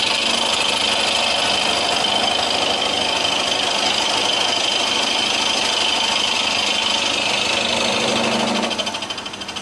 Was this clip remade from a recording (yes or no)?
no